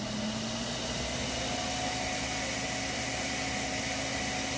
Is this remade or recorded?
recorded